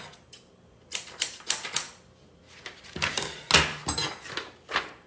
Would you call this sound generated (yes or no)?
no